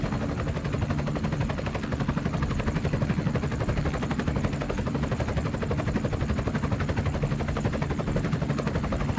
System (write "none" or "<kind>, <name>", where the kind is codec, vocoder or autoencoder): none